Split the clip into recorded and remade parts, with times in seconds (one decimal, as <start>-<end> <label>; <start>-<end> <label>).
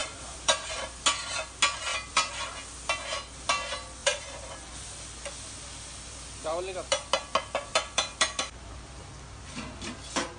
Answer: 0.0-0.7 remade; 0.7-1.9 recorded; 1.9-2.4 remade; 2.4-4.0 recorded; 4.0-4.7 remade; 4.7-7.7 recorded; 7.7-8.7 remade; 8.7-10.4 recorded